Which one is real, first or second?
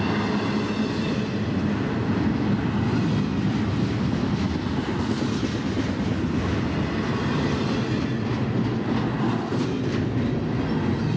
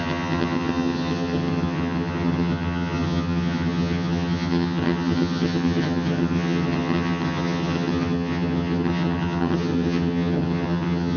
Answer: first